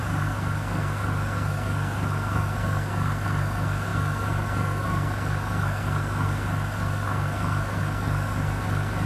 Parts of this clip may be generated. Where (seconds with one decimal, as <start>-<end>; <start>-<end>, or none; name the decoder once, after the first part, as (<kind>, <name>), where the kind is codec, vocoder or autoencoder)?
0.0-9.1 (codec, SNAC)